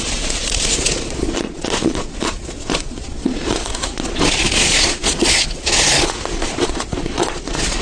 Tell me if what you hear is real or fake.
fake